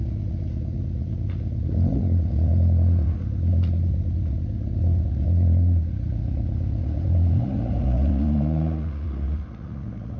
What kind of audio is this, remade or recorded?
remade